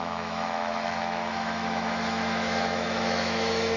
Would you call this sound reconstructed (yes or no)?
yes